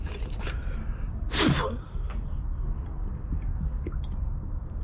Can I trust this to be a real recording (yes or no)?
yes